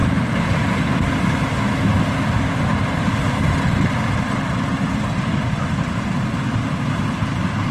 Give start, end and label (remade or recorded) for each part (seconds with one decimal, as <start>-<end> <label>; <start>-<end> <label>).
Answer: 0.0-1.0 remade; 1.0-2.8 recorded; 2.8-4.7 remade; 4.7-7.7 recorded